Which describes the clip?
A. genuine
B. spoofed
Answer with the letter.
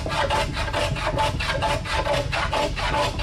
A